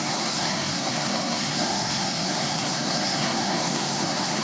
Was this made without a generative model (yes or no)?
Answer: no